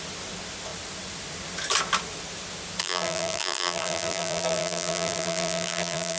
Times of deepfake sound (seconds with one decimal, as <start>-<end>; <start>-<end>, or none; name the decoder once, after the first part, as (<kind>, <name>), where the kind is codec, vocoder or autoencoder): 2.8-6.2 (vocoder, BigVGAN v2)